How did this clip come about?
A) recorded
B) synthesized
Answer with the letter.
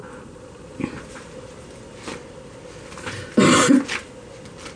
A